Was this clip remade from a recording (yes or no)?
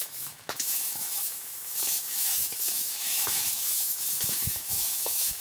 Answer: yes